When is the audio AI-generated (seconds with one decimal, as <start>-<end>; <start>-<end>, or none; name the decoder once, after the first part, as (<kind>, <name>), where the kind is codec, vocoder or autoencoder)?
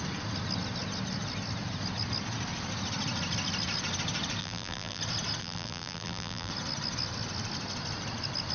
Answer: 4.4-5.0 (vocoder, BigVGAN v2); 5.4-6.5